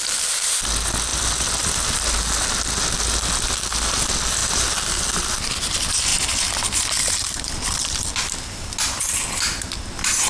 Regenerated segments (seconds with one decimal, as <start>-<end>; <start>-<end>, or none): 4.4-5.0

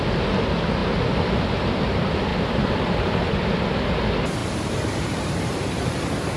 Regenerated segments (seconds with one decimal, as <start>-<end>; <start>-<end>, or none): 2.3-3.2; 4.4-5.9

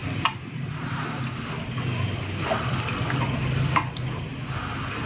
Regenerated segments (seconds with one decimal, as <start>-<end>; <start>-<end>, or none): 0.0-1.2

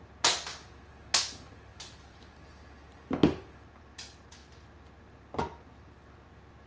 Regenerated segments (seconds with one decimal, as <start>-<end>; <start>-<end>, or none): 1.7-2.4

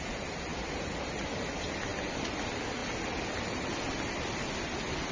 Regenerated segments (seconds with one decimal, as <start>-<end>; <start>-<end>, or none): 1.9-2.4

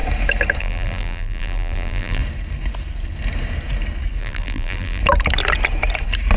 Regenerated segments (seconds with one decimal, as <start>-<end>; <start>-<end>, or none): 0.6-2.2; 4.2-5.0